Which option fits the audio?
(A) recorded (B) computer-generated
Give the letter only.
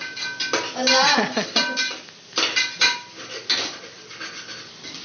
A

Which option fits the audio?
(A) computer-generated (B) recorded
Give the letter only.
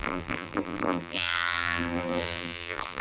A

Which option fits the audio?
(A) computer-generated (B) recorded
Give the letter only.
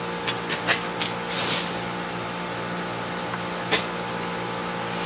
B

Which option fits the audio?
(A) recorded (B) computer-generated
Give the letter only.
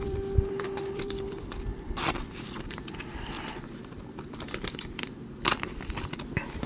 B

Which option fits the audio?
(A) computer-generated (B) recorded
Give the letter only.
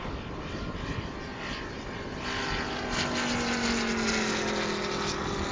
B